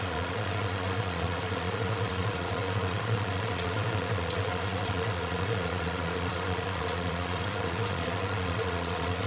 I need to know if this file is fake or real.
fake